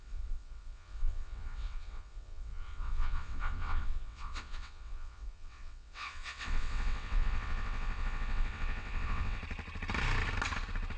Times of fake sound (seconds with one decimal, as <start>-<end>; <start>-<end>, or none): 0.0-9.4